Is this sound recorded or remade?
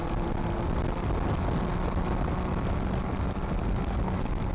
recorded